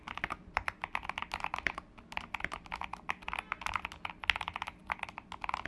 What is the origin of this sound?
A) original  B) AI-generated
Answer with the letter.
A